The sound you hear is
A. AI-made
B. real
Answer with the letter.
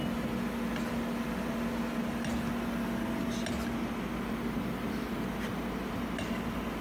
B